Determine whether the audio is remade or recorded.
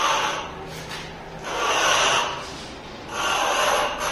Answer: recorded